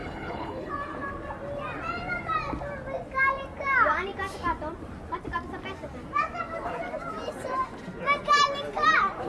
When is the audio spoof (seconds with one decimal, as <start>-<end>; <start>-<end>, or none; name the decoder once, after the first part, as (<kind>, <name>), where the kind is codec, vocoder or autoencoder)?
0.0-0.7 (codec, HILCodec)